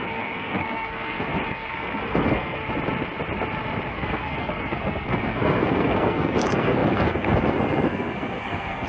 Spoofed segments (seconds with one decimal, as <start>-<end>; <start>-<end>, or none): 0.0-2.6; 3.9-8.9